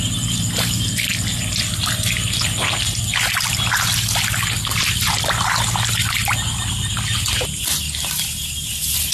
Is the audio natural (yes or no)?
yes